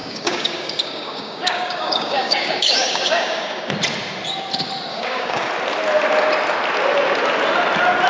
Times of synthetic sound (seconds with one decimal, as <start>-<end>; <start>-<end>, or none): 0.0-3.7; 4.9-5.5

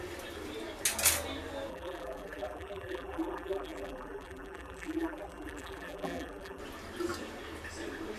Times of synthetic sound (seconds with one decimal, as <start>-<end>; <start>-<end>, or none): 1.7-6.6

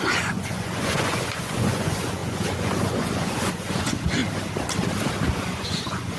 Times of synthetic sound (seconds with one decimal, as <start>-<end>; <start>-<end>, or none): 0.0-4.2; 5.3-6.2

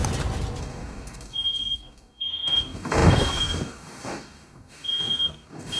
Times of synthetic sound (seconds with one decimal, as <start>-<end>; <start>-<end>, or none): 0.6-5.8

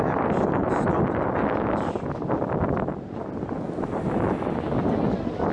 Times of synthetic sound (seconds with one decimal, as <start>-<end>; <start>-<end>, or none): none